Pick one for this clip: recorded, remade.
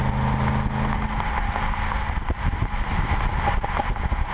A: recorded